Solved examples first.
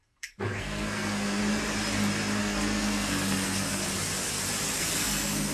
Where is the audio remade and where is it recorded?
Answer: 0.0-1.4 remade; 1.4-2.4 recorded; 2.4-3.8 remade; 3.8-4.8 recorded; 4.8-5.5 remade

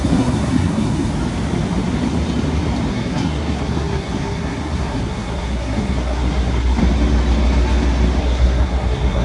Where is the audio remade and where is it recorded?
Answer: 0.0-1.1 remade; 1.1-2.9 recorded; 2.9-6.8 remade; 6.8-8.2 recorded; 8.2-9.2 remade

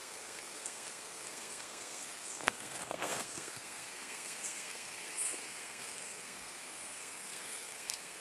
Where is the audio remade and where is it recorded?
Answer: 0.0-8.2 remade